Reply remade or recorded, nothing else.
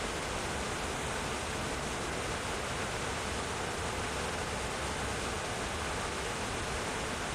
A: recorded